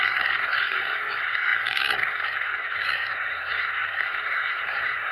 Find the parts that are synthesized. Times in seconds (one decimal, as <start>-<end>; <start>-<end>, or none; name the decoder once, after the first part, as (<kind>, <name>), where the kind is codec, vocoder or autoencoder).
0.0-5.1 (codec, SNAC)